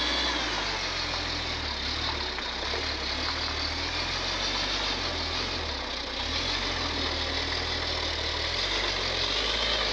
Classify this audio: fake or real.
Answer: real